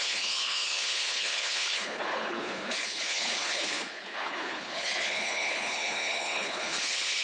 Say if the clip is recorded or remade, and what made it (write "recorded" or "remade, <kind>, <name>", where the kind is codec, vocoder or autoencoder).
remade, codec, HILCodec